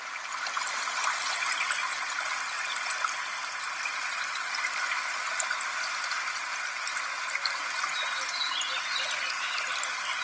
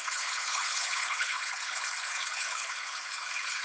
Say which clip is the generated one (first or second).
second